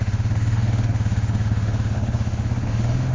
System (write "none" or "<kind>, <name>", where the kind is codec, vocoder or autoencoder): autoencoder, DAC-VAE